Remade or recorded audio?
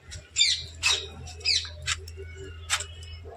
recorded